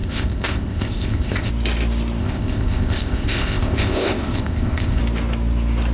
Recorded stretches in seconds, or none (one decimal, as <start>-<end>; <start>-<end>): 1.5-2.2; 5.0-5.9